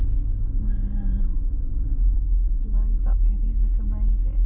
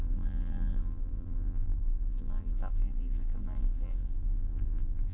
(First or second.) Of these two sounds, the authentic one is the first